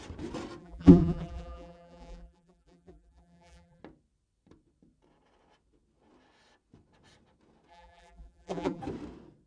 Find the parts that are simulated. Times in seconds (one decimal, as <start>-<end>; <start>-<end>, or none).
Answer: 0.6-3.8; 7.7-8.8